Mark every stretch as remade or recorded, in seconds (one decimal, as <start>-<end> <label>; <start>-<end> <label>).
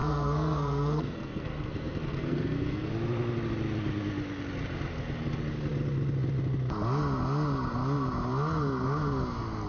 0.0-2.9 remade; 2.9-9.7 recorded